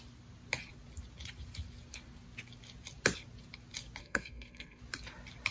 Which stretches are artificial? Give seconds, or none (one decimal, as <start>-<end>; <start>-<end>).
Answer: 4.0-4.8